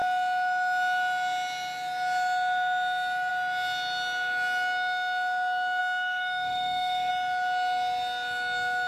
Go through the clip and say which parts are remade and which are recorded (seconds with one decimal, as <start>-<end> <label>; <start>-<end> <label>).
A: 0.0-5.8 recorded; 5.8-7.1 remade; 7.1-8.9 recorded